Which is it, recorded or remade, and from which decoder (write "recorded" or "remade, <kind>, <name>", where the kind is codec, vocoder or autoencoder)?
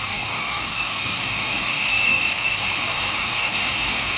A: remade, codec, DAC